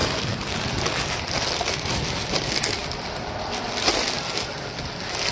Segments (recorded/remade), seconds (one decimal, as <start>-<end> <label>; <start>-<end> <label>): 0.0-5.3 recorded